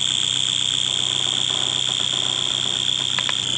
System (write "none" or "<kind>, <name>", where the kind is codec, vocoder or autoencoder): none